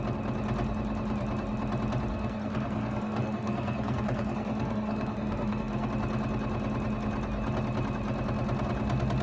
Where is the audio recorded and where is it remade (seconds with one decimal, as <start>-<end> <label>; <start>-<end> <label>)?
0.0-2.1 recorded; 2.1-5.9 remade; 5.9-9.2 recorded